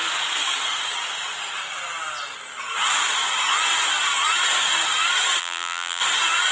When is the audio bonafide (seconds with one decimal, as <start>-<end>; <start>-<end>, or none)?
0.0-5.4; 6.0-6.5